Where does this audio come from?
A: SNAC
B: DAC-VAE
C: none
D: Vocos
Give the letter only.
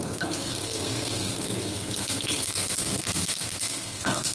A